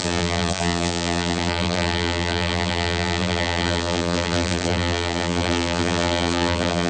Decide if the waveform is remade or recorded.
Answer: remade